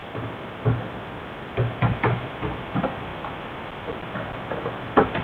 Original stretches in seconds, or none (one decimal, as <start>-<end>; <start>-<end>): 0.0-5.2